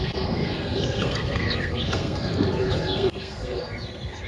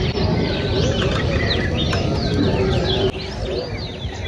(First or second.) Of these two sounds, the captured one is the second